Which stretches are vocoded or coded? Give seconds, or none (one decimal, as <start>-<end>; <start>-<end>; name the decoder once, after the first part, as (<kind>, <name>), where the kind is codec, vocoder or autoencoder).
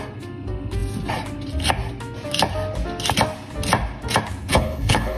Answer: 4.5-5.2 (codec, HILCodec)